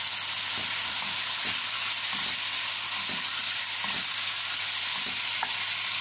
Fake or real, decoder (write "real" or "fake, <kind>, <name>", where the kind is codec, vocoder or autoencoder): real